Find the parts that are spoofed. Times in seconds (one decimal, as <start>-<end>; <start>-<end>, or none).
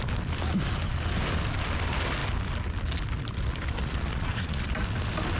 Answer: 3.8-4.8